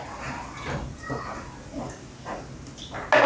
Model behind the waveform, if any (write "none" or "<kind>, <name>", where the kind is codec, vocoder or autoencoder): none